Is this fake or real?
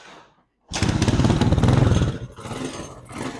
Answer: real